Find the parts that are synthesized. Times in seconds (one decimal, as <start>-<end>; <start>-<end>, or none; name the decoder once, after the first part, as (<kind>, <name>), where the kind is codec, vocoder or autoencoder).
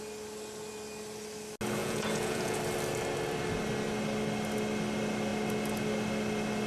1.8-2.6 (vocoder, Vocos)